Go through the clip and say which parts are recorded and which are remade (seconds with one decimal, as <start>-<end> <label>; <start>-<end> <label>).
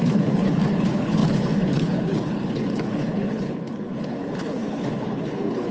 0.0-5.7 remade